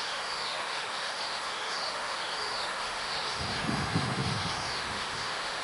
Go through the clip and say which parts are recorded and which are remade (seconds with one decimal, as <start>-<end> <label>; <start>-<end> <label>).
0.0-5.6 remade